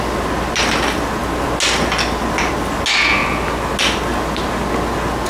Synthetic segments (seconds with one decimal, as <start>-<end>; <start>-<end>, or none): none